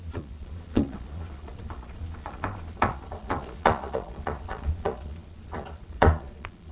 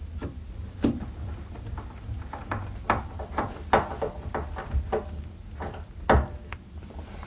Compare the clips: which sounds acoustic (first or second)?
second